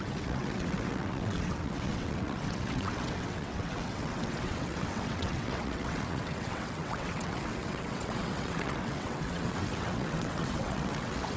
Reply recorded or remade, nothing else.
remade